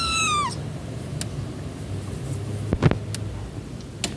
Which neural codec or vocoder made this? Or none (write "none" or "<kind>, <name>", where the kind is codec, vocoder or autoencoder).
none